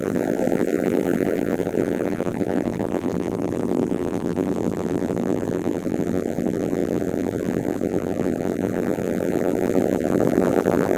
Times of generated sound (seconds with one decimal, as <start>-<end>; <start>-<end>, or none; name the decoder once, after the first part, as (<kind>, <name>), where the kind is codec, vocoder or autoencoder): 0.0-11.0 (vocoder, BigVGAN v2)